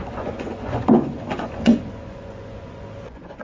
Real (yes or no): no